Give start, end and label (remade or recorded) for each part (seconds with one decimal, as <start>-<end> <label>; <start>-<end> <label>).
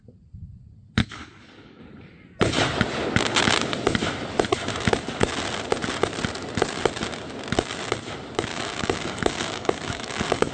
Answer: 0.0-1.0 recorded; 1.0-1.8 remade; 1.8-8.5 recorded; 8.5-10.5 remade